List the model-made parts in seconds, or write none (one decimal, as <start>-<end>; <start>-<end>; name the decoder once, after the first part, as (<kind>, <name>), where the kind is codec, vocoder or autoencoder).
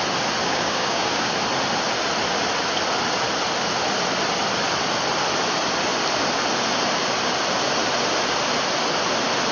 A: 0.4-1.3 (codec, DAC)